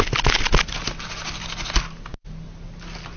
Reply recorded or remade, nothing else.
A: recorded